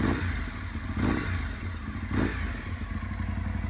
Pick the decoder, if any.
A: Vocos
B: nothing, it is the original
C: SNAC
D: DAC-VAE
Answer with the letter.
B